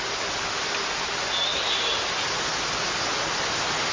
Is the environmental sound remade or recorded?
recorded